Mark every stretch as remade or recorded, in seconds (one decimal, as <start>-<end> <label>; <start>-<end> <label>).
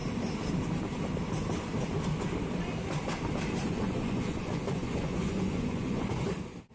0.0-3.6 recorded; 3.6-6.3 remade; 6.3-6.7 recorded